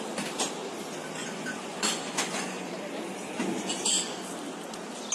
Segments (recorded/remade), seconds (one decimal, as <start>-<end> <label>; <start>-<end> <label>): 0.0-1.2 recorded; 1.2-2.7 remade; 2.7-3.4 recorded; 3.4-4.2 remade; 4.2-5.1 recorded